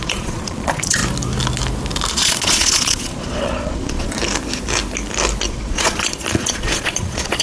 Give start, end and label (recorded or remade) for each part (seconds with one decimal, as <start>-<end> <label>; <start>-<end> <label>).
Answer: 0.0-1.0 remade; 1.0-2.1 recorded; 2.1-4.2 remade; 4.2-5.5 recorded; 5.5-7.4 remade